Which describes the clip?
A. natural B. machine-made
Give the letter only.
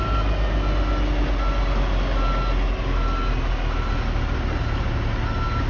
A